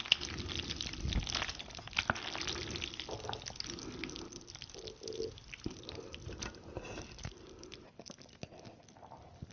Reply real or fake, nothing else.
real